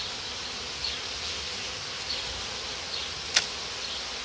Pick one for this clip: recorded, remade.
recorded